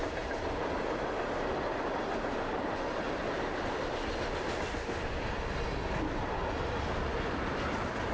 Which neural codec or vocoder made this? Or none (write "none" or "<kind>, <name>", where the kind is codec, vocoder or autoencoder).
none